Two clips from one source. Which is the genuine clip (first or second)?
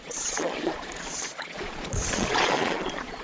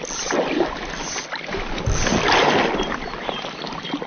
second